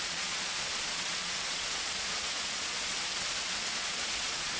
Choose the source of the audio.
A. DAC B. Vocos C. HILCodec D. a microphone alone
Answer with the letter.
B